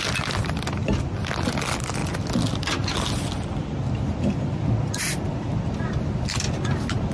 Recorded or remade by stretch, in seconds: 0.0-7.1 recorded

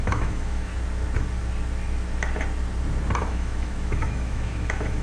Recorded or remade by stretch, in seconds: 0.0-0.7 remade; 0.7-3.2 recorded; 3.2-5.0 remade

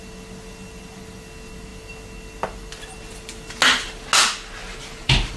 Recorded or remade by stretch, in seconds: 0.0-4.6 recorded; 4.6-5.4 remade

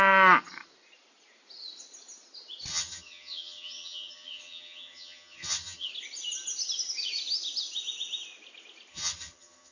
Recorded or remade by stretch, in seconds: 0.0-2.7 recorded; 2.7-5.9 remade; 5.9-8.9 recorded; 8.9-9.7 remade

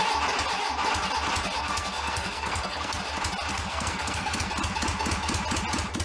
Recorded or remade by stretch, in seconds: 0.0-1.6 recorded; 1.6-3.0 remade; 3.0-3.5 recorded; 3.5-4.5 remade; 4.5-6.0 recorded

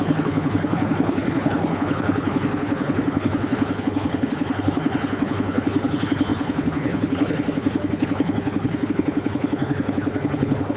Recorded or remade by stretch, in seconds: 0.0-10.8 remade